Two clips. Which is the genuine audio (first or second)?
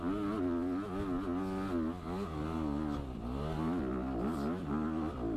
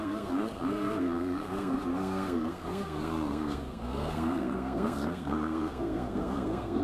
first